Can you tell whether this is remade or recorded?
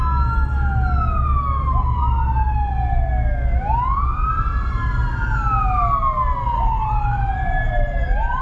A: recorded